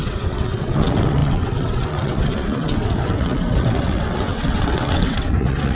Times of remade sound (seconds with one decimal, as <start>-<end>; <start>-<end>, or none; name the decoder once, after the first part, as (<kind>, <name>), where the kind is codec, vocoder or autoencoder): 0.0-5.7 (vocoder, WaveNeXt)

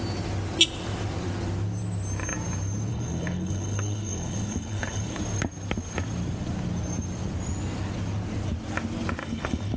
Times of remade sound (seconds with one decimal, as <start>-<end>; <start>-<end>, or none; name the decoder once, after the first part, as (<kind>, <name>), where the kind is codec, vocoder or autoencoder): 2.9-5.2 (codec, HILCodec); 9.2-9.8

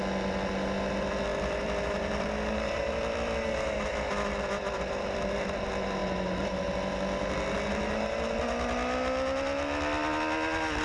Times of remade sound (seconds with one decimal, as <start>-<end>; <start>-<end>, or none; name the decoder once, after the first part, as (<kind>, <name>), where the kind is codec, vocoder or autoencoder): 1.3-5.6 (vocoder, BigVGAN v2)